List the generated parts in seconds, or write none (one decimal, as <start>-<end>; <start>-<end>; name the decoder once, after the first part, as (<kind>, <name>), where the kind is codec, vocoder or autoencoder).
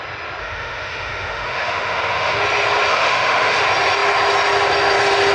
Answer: 0.4-2.4 (autoencoder, DAC-VAE); 2.9-3.6